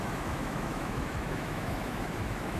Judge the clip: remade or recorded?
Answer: remade